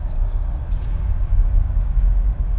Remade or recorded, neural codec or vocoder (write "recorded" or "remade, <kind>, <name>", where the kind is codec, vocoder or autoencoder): remade, codec, DAC